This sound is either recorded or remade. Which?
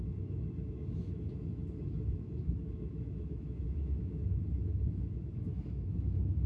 remade